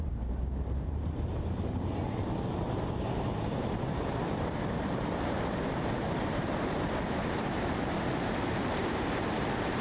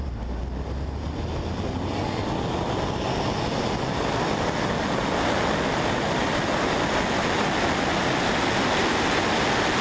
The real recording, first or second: second